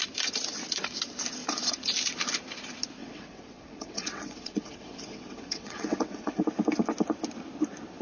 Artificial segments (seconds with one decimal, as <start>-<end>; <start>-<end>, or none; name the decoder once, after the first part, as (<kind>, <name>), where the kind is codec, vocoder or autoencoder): 3.0-6.4 (vocoder, WaveNeXt)